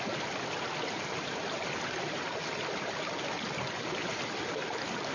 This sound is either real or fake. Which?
real